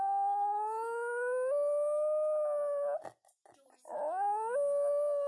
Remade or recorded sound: recorded